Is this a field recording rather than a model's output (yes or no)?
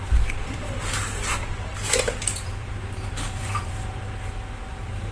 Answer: no